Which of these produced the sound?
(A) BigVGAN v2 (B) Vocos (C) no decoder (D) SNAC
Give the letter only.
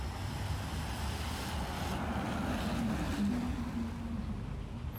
C